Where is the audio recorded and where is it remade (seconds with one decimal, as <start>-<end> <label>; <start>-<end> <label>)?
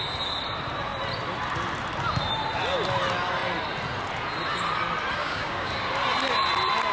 0.0-5.2 recorded; 5.2-5.7 remade; 5.7-6.9 recorded